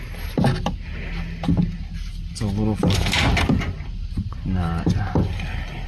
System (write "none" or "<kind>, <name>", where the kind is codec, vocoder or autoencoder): none